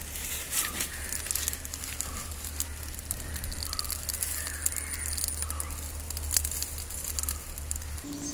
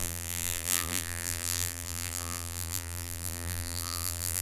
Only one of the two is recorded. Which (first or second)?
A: first